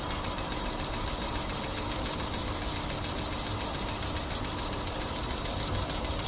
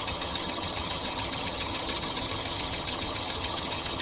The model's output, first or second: second